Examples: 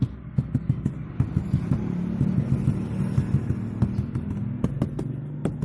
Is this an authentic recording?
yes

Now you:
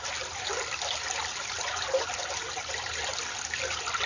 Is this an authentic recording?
yes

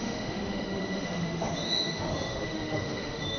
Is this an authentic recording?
no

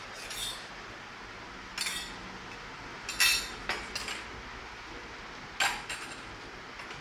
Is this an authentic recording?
yes